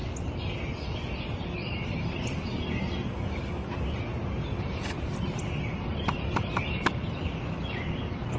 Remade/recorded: recorded